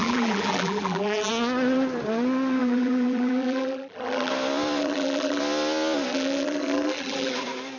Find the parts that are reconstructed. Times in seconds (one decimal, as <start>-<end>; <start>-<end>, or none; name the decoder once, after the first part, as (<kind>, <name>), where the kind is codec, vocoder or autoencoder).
0.0-1.3 (vocoder, BigVGAN v2); 2.6-4.3; 4.8-5.4; 6.1-7.3